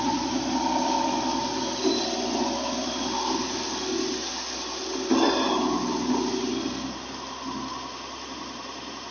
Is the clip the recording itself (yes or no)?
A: yes